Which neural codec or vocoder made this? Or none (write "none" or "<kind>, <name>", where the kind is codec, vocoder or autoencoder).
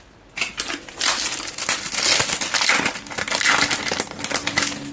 none